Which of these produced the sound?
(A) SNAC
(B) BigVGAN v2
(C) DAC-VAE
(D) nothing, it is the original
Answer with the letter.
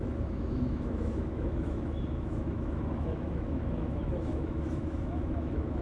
C